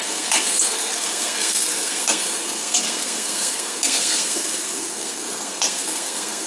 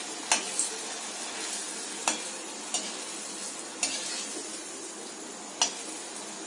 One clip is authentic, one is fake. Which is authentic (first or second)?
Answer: second